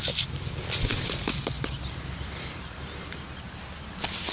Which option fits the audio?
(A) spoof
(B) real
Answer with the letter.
B